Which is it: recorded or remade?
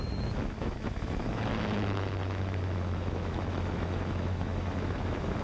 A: remade